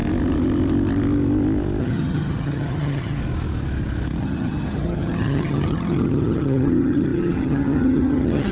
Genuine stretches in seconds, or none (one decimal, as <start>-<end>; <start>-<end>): 0.0-1.8; 3.2-4.2